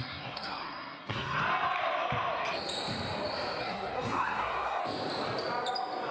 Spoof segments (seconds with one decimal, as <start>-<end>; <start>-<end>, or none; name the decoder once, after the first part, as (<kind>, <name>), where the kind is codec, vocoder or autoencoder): 0.0-1.4 (codec, SNAC); 3.6-4.8